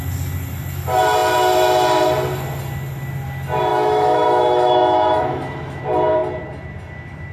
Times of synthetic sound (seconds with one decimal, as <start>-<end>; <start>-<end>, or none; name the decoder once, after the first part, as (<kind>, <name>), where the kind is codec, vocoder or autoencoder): 3.7-5.8 (autoencoder, DAC-VAE)